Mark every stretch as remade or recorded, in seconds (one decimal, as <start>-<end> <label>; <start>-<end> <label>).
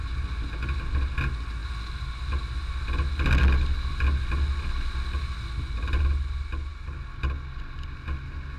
0.0-8.6 recorded